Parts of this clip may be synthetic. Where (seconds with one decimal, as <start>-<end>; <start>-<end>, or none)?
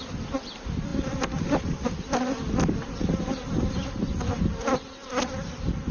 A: none